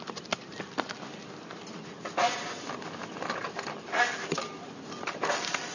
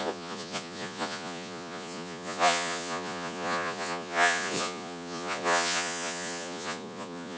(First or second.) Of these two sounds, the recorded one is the first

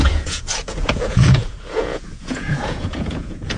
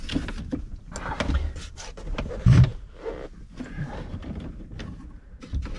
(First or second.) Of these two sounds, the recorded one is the second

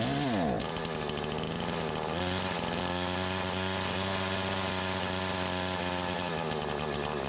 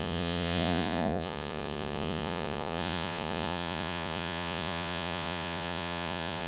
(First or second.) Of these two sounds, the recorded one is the first